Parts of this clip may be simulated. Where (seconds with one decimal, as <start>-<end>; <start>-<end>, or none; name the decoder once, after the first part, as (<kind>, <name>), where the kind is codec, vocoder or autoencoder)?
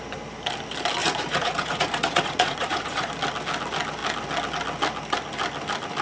1.0-3.1 (vocoder, Vocos)